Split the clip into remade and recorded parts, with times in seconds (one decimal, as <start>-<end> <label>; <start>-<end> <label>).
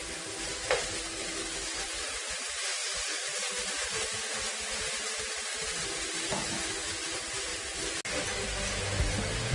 0.0-9.5 recorded